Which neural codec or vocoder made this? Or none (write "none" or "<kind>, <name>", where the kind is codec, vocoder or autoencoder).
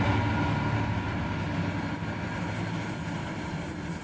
none